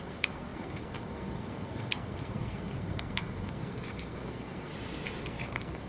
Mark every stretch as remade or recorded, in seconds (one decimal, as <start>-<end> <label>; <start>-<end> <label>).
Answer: 0.0-4.7 remade; 4.7-5.2 recorded; 5.2-5.9 remade